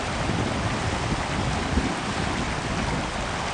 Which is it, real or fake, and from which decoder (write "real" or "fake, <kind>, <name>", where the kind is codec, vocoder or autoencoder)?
real